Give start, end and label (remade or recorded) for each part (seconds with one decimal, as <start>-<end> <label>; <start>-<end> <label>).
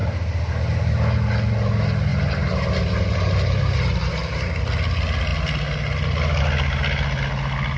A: 0.0-2.1 recorded; 2.1-4.5 remade; 4.5-7.8 recorded